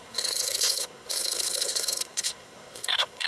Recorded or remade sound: remade